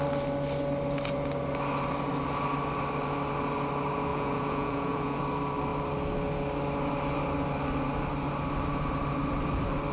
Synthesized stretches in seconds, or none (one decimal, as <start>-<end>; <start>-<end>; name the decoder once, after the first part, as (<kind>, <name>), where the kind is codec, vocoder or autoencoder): 4.1-5.2 (vocoder, Vocos)